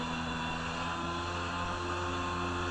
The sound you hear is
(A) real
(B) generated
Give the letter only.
A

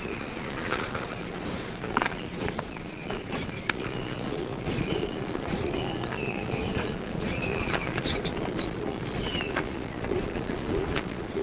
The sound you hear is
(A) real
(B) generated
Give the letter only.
B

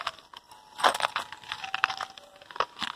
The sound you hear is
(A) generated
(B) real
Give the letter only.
B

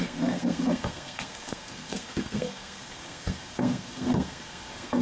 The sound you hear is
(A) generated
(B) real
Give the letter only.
A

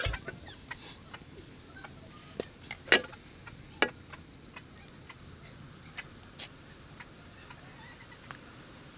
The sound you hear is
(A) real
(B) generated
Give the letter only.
A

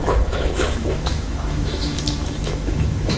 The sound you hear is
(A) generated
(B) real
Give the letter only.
A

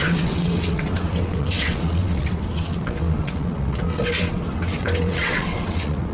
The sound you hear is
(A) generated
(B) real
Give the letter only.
A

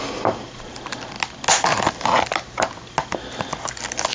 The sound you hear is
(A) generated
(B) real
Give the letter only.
B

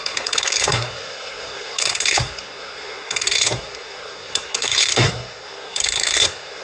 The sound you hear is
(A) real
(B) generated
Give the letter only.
B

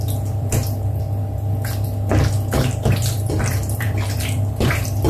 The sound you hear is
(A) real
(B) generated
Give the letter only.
B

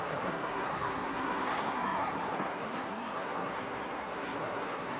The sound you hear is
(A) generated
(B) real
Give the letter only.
A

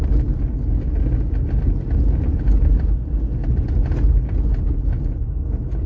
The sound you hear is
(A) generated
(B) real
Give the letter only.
B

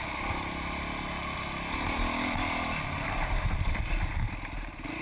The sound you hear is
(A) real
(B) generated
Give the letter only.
A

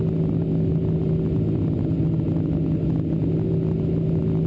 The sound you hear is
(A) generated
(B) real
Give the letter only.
B